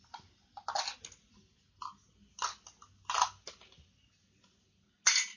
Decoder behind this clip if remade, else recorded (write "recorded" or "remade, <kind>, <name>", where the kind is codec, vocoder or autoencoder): recorded